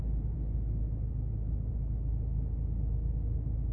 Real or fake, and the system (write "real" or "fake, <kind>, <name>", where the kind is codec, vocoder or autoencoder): real